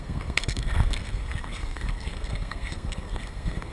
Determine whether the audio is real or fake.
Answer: fake